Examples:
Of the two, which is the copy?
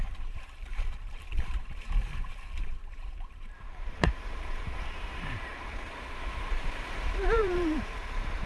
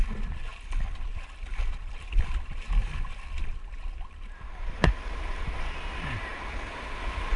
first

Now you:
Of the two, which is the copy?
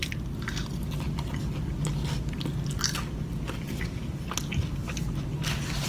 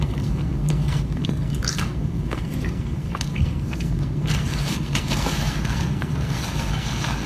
second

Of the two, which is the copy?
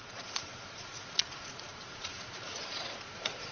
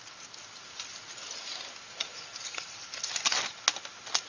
first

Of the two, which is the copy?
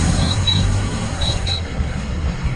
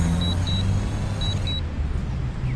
first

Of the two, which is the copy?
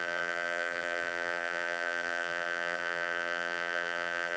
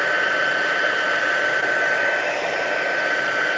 first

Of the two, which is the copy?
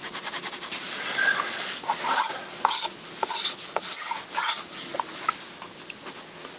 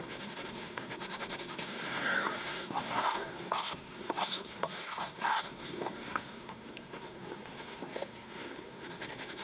second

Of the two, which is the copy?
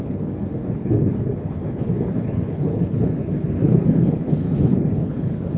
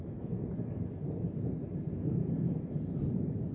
first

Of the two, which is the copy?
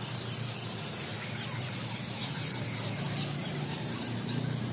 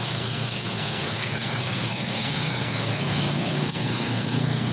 second